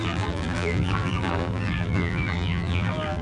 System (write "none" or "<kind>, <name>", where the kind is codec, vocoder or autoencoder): vocoder, BigVGAN v2